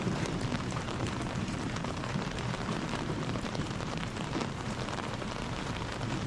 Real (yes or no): no